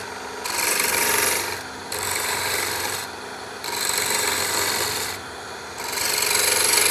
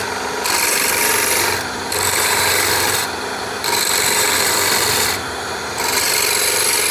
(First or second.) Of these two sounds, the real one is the first